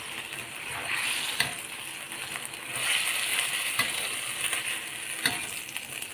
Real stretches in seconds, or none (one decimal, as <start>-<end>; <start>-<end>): 0.0-3.3; 3.9-6.1